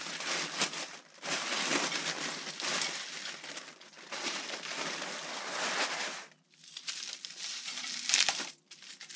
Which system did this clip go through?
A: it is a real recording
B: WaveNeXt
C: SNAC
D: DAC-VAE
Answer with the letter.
A